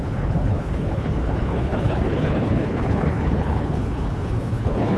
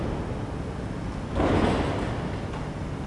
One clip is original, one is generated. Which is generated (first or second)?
first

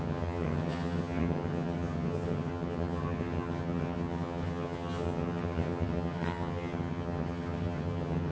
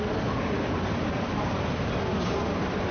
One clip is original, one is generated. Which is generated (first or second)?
first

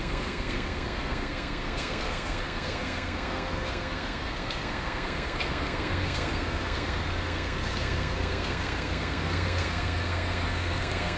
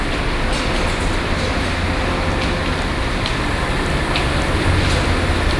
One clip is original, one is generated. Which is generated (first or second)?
first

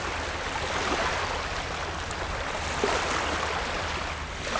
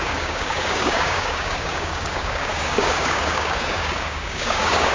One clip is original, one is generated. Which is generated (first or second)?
second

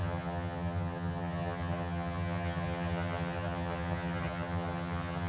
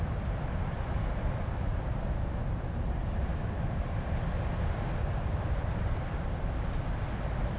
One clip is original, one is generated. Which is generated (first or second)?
first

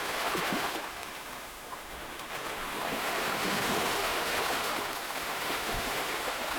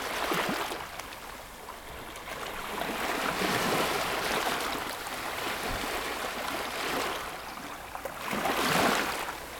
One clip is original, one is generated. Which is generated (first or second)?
first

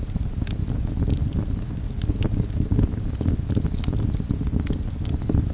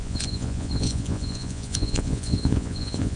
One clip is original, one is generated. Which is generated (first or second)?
second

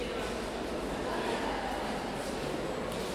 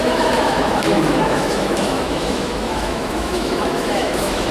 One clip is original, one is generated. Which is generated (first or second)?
second